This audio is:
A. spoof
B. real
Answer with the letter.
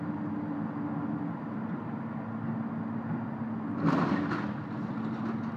B